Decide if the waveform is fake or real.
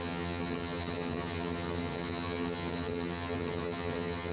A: fake